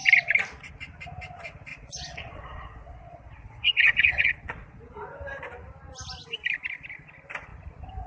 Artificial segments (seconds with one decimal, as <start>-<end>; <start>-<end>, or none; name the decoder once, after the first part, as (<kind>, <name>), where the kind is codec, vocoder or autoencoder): 1.7-4.8 (vocoder, Vocos)